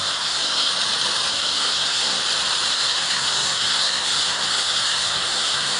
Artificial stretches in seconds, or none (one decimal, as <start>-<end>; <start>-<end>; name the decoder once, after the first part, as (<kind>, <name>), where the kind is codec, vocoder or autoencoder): 0.0-0.7 (codec, SNAC); 1.3-2.2; 2.7-5.8